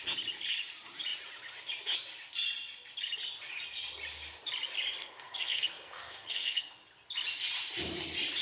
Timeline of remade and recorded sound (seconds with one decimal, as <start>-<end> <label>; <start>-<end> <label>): 0.0-5.0 recorded; 5.0-6.7 remade; 6.7-8.4 recorded

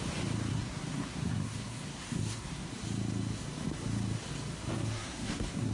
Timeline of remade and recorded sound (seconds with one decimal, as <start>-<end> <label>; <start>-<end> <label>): 0.0-0.5 recorded; 0.5-2.7 remade; 2.7-4.7 recorded; 4.7-5.7 remade

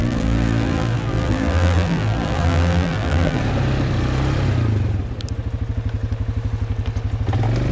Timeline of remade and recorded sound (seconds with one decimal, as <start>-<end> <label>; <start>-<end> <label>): 0.0-3.4 remade; 3.4-7.7 recorded